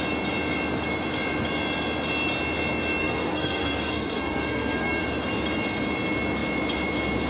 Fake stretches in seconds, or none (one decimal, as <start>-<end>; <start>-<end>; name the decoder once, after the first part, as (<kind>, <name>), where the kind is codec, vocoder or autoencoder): 3.0-5.0 (codec, SNAC)